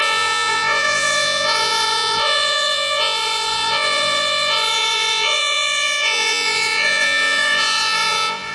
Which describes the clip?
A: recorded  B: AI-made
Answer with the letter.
B